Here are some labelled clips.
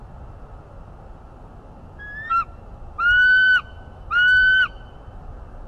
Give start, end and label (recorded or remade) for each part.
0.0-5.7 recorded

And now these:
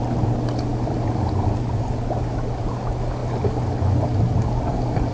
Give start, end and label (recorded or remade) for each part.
0.0-0.7 recorded; 0.7-1.5 remade; 1.5-5.1 recorded